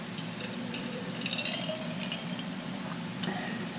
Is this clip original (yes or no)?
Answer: no